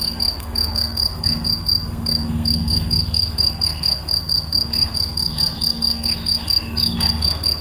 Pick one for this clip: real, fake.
fake